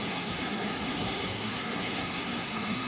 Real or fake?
fake